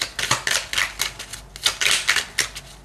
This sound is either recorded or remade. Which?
recorded